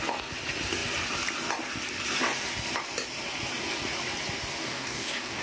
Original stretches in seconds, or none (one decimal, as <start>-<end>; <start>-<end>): 0.0-4.6